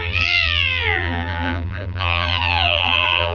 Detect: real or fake fake